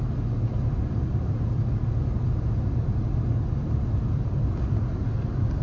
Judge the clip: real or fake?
real